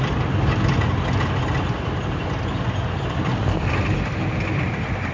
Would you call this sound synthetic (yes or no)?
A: no